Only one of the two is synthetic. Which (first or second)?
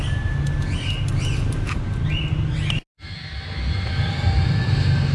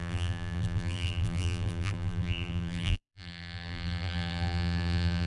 second